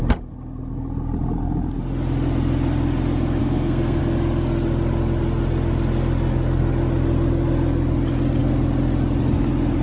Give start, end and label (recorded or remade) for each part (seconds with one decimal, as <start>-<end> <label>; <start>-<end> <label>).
0.0-3.4 recorded; 3.4-4.0 remade; 4.0-9.8 recorded